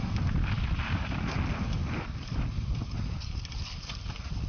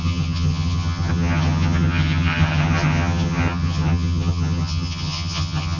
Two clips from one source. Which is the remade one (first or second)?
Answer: second